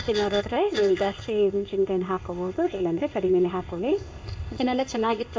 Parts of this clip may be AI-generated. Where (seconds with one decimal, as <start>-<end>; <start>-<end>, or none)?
0.0-5.4

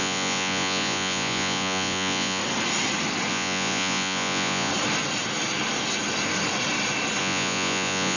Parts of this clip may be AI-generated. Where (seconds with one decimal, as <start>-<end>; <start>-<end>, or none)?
0.0-2.4; 3.3-4.7; 7.2-8.2